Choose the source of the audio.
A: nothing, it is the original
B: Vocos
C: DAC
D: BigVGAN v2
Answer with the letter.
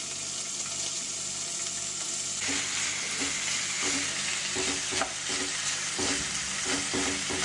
A